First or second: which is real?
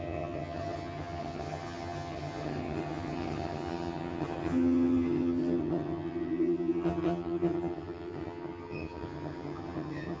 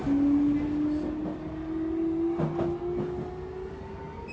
second